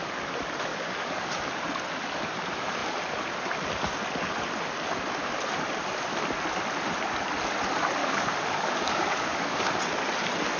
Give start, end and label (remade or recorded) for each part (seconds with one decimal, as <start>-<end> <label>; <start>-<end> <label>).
0.0-0.7 recorded; 0.7-1.4 remade; 1.4-8.0 recorded; 8.0-9.8 remade; 9.8-10.6 recorded